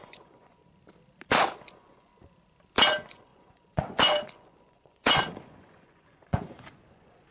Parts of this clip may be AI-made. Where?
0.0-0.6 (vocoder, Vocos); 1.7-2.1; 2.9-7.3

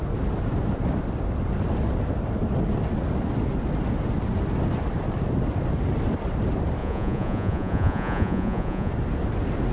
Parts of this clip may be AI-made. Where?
6.8-8.9 (vocoder, Vocos)